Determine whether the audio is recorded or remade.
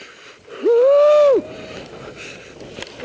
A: recorded